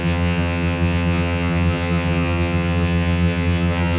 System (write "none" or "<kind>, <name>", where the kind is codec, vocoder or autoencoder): vocoder, HiFi-GAN